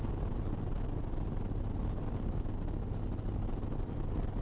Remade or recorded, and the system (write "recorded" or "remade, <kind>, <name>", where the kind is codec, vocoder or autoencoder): recorded